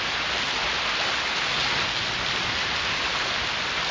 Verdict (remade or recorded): recorded